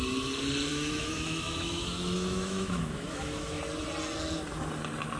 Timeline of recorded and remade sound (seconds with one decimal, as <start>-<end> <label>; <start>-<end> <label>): 0.0-0.7 recorded; 0.7-3.6 remade; 3.6-5.2 recorded